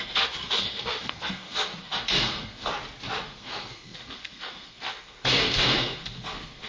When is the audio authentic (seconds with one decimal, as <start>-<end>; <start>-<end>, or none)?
2.7-3.2

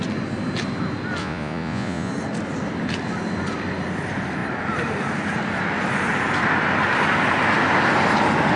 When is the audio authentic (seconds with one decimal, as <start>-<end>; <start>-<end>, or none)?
0.0-1.2; 2.1-8.6

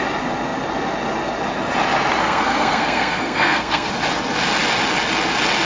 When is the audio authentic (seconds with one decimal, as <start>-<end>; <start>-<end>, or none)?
0.0-2.2; 3.9-5.6

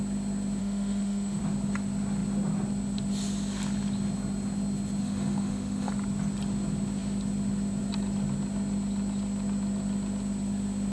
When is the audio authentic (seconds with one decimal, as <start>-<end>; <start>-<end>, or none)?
0.0-0.6; 1.4-5.0; 5.9-10.9

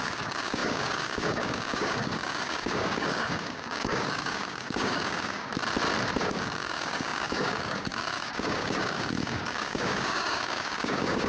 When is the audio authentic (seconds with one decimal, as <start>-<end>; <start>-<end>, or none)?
5.5-6.2

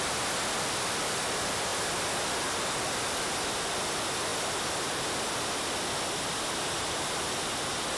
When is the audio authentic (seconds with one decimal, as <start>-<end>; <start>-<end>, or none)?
0.0-8.0

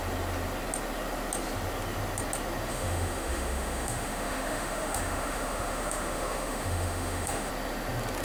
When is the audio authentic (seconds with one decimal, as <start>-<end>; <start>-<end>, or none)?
0.0-2.7; 7.5-8.2